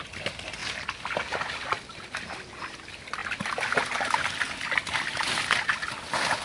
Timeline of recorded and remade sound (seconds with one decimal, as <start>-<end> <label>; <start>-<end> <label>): 0.0-6.4 recorded